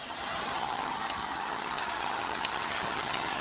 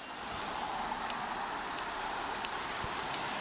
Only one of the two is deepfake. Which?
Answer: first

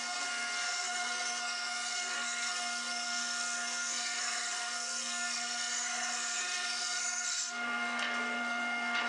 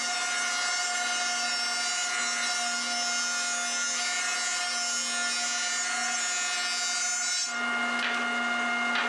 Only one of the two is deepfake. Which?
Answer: first